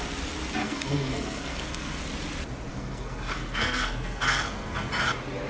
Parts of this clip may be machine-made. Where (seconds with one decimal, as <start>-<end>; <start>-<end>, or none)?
0.6-2.0; 2.7-4.9